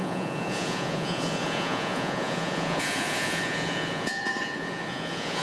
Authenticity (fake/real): fake